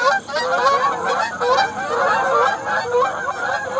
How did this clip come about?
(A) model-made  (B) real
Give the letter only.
A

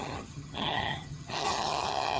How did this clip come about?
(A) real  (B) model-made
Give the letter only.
B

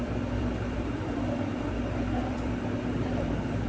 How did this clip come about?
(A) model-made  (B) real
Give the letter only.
A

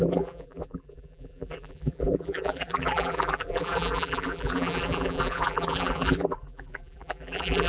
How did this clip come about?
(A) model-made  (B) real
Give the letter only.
A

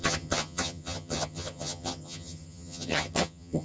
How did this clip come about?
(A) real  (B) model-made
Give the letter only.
B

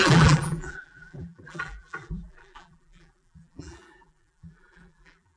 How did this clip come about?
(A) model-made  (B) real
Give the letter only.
A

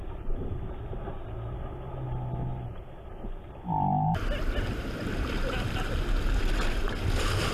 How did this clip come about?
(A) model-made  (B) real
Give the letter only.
B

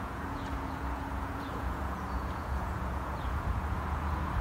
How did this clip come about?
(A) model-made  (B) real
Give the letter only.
A